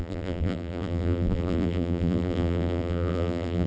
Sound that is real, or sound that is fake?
fake